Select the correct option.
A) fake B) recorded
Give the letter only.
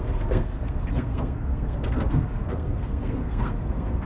A